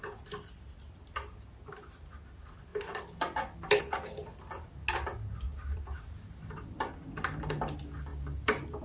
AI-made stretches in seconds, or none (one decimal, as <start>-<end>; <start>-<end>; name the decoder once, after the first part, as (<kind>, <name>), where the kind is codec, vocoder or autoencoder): 5.5-6.9 (vocoder, BigVGAN v2)